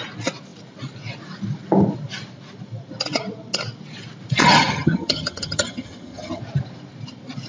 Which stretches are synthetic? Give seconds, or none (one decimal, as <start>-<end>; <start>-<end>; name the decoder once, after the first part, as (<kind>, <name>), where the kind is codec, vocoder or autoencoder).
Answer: 4.4-6.4 (vocoder, HiFi-GAN)